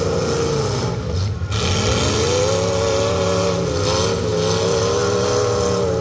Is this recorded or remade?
recorded